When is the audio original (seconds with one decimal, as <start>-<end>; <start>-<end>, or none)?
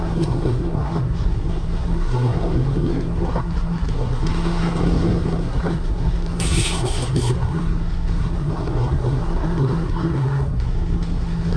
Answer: none